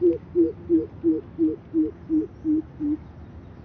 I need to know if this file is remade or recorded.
recorded